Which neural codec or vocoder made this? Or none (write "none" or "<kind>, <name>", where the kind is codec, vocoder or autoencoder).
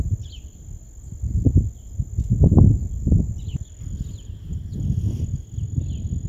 none